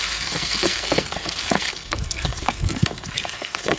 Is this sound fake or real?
fake